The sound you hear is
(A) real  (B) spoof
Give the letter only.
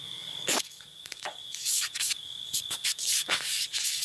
B